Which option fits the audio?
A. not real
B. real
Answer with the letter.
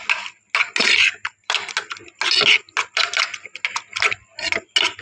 B